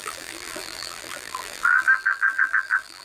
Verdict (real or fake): fake